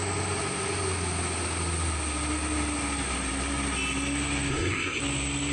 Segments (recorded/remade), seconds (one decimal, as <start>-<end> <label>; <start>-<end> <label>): 0.0-4.5 recorded; 4.5-5.0 remade; 5.0-5.5 recorded